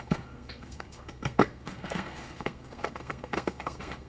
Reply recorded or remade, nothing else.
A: remade